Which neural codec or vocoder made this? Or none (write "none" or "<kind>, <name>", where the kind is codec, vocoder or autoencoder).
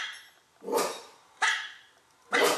none